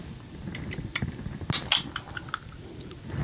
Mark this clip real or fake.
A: real